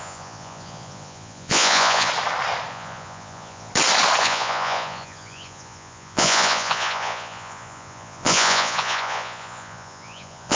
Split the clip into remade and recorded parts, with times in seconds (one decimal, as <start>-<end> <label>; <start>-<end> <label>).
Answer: 0.0-2.1 remade; 2.1-2.7 recorded; 2.7-3.7 remade; 3.7-4.2 recorded; 4.2-10.6 remade